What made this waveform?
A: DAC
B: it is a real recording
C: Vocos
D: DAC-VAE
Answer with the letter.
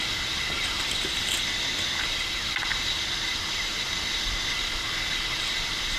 B